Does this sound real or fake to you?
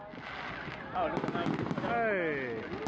real